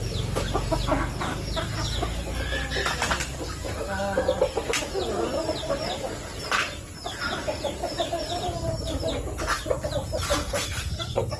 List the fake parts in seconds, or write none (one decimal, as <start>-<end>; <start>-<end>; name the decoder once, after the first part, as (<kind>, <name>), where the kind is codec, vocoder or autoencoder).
10.4-11.4 (codec, SNAC)